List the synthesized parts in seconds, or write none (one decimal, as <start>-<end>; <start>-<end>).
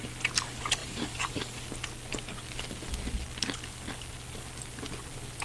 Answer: 0.8-1.4